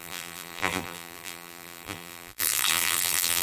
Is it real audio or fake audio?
fake